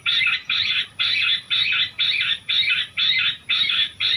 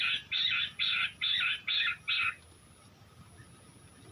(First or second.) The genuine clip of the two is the second